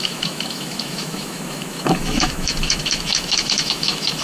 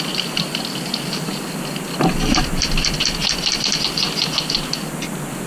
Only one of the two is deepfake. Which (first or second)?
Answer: first